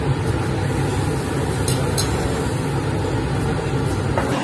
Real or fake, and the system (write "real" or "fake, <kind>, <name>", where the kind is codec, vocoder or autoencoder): real